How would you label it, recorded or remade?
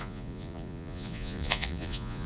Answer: remade